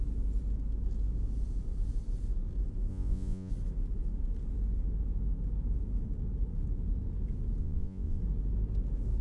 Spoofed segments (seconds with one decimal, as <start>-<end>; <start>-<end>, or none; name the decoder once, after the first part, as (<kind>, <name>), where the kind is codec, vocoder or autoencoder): 2.9-3.5 (vocoder, Vocos); 7.6-8.2